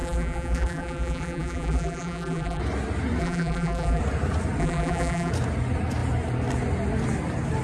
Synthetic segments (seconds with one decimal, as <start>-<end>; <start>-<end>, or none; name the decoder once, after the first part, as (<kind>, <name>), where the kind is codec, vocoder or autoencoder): 0.0-2.6 (vocoder, BigVGAN v2); 3.2-4.0; 4.6-5.3